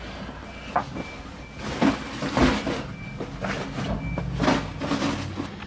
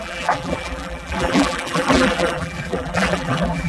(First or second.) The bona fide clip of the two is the first